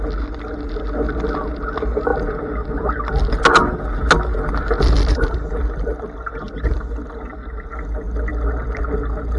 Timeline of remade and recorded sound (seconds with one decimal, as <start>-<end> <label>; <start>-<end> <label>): 0.0-9.4 recorded